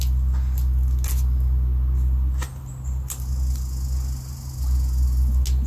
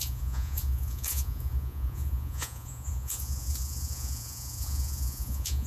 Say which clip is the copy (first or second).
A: second